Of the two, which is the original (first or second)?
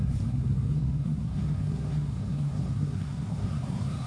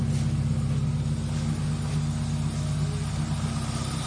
second